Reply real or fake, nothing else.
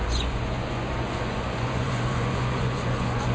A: fake